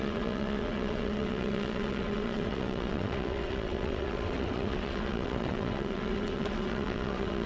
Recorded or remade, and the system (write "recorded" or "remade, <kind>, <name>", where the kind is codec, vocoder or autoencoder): remade, vocoder, WaveNeXt